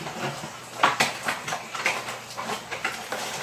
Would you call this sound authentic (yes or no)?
yes